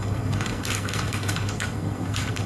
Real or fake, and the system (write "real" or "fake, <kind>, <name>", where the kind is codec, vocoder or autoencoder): fake, codec, SNAC